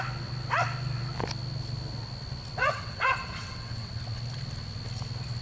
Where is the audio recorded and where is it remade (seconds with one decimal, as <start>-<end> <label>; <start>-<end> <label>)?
0.0-2.6 recorded; 2.6-3.9 remade; 3.9-5.4 recorded